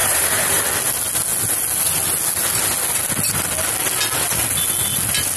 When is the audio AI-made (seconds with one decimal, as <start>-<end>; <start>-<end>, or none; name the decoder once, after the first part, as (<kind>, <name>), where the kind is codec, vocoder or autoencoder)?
0.0-0.6 (vocoder, BigVGAN v2)